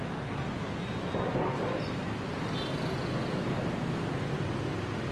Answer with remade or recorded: recorded